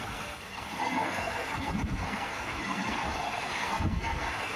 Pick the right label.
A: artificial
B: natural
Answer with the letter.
A